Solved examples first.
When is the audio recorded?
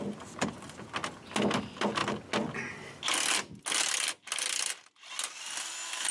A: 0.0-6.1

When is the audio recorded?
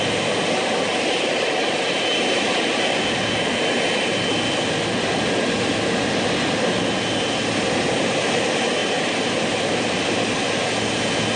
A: 0.0-11.4